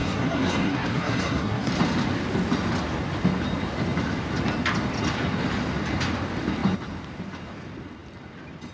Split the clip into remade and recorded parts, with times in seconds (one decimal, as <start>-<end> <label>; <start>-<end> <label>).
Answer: 0.0-1.7 remade; 1.7-8.7 recorded